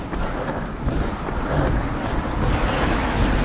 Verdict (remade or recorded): recorded